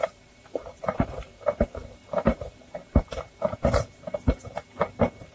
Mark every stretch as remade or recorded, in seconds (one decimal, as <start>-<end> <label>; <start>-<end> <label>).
0.0-5.3 remade